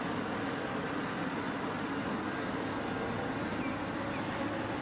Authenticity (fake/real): real